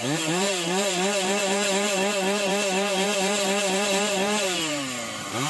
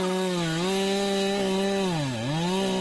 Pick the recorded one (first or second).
second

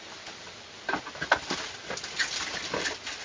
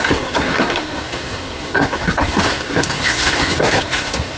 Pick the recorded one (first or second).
first